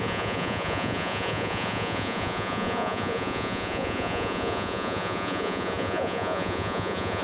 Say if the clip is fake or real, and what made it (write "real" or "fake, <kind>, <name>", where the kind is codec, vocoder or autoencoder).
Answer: fake, vocoder, Vocos